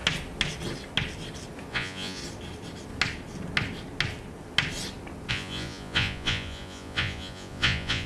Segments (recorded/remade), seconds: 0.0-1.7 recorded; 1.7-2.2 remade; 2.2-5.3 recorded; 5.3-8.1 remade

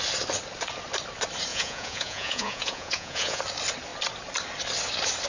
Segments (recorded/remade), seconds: 0.0-1.5 recorded; 1.5-3.4 remade; 3.4-5.3 recorded

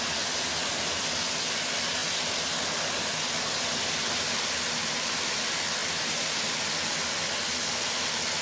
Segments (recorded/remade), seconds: 0.0-8.4 recorded